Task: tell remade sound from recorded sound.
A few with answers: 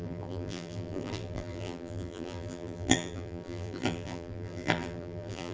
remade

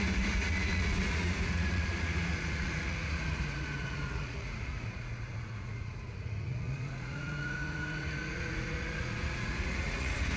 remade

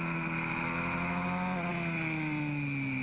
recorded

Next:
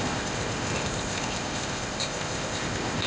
remade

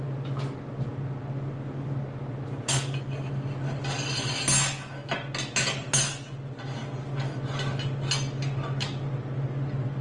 recorded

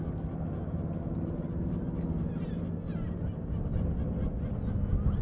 recorded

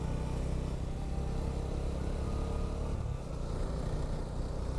recorded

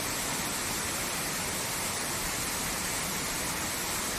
recorded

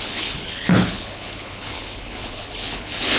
remade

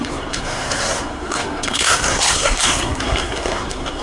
remade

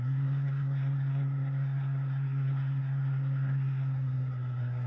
remade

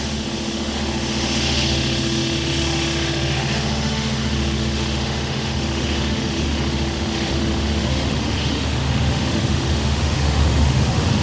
remade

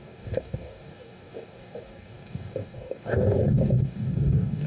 remade